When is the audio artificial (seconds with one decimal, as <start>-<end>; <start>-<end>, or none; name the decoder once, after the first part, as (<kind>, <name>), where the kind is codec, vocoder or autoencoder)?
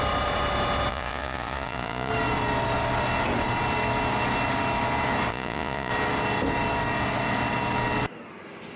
0.9-2.1 (vocoder, Vocos); 5.3-5.9